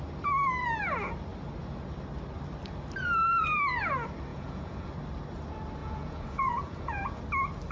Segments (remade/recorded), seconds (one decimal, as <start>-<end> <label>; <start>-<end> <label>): 0.0-4.3 recorded; 4.3-4.9 remade; 4.9-5.8 recorded; 5.8-7.2 remade; 7.2-7.7 recorded